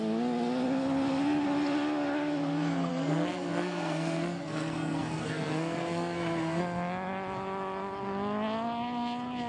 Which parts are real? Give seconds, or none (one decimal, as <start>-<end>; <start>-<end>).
0.0-2.9; 6.6-9.5